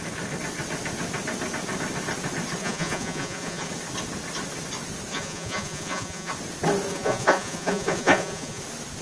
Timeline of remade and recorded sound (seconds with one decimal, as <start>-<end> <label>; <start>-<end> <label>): 0.0-2.6 recorded; 2.6-3.7 remade; 3.7-5.1 recorded; 5.1-6.3 remade; 6.3-6.9 recorded; 6.9-8.6 remade; 8.6-9.0 recorded